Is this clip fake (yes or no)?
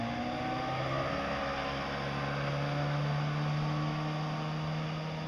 no